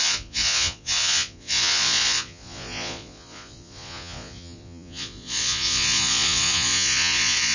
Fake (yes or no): yes